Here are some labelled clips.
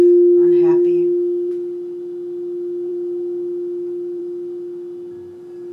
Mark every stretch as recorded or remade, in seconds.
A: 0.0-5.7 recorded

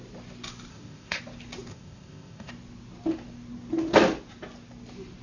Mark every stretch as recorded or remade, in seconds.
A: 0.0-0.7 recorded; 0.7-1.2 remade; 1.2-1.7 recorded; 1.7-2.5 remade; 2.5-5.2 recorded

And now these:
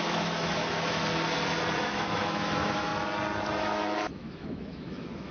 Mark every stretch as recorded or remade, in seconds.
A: 0.0-1.0 remade; 1.0-1.8 recorded; 1.8-2.9 remade; 2.9-3.6 recorded; 3.6-5.3 remade

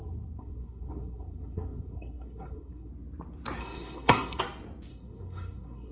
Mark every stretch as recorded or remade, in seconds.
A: 0.0-2.9 remade; 2.9-3.6 recorded; 3.6-4.4 remade; 4.4-4.9 recorded; 4.9-5.9 remade

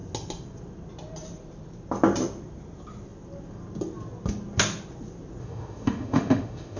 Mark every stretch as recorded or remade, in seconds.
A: 0.0-5.4 recorded; 5.4-6.8 remade

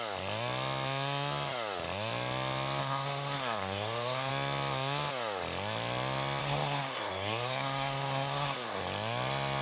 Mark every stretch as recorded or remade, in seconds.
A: 0.0-2.8 recorded; 2.8-4.3 remade; 4.3-6.4 recorded; 6.4-8.8 remade; 8.8-9.6 recorded

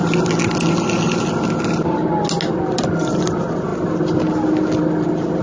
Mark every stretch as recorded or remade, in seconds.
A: 0.0-5.4 recorded